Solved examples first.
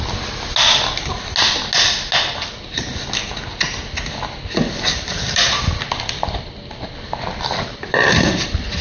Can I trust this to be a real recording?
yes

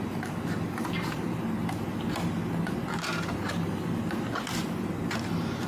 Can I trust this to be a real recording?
yes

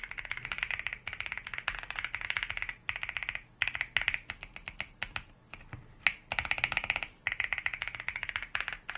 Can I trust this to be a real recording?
yes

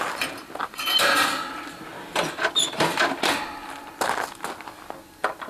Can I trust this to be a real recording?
yes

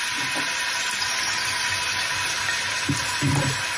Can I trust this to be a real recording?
yes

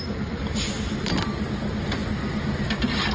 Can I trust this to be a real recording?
yes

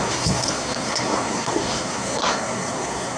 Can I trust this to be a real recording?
no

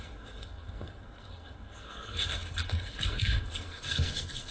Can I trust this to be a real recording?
no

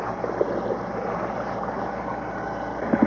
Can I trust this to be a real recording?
yes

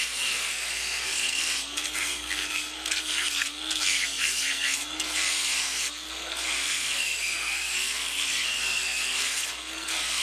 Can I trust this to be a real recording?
no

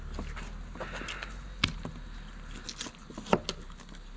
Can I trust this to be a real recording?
yes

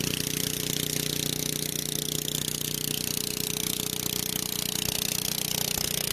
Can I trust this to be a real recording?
yes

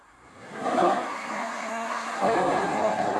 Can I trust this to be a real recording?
no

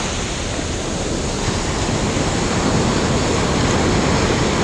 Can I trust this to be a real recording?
yes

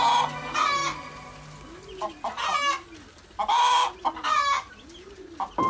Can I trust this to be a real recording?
yes